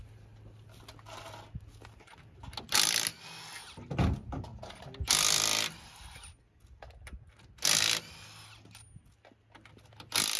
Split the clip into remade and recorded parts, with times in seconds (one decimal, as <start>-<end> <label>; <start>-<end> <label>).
0.0-10.4 recorded